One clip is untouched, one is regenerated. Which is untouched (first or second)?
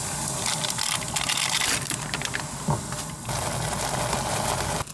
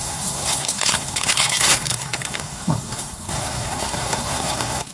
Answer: first